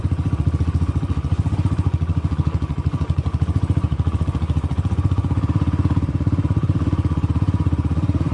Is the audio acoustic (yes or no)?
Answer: no